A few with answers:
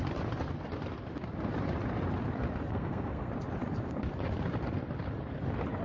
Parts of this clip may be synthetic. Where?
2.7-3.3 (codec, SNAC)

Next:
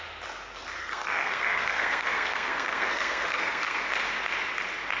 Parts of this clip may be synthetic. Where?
0.8-3.8 (codec, SNAC)

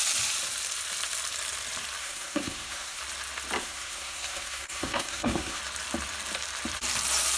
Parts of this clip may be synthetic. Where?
2.0-3.0 (codec, SNAC); 3.6-5.6

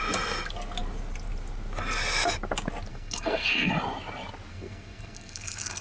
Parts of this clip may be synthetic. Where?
2.9-3.7 (codec, SNAC); 4.5-5.8

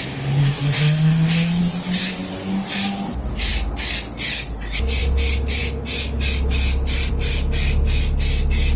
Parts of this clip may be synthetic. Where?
0.4-1.6 (codec, SNAC)

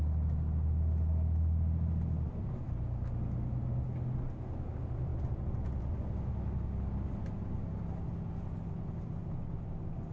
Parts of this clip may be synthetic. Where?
none

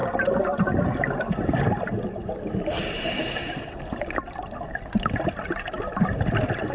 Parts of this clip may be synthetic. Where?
none

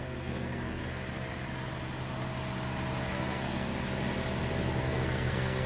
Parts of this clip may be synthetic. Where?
0.0-0.8 (codec, SNAC); 3.1-3.7; 4.8-5.7